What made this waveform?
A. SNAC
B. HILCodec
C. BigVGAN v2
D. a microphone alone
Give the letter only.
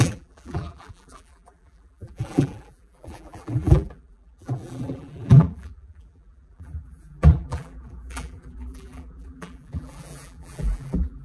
C